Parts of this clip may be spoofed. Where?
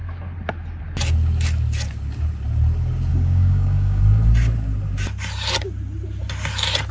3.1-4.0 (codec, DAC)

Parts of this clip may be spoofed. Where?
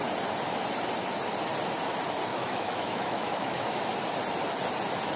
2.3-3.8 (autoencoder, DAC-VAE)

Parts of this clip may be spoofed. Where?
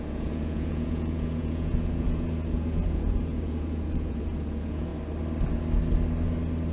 0.0-4.9 (vocoder, Vocos)